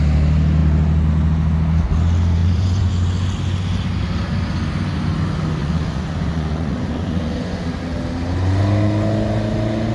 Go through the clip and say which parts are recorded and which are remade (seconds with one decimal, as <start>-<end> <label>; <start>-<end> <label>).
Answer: 0.0-2.4 recorded; 2.4-2.9 remade; 2.9-5.6 recorded; 5.6-7.8 remade; 7.8-9.9 recorded